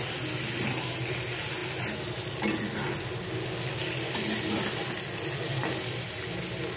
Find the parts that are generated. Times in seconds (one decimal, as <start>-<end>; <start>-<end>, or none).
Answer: none